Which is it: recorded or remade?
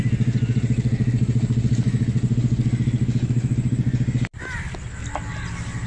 recorded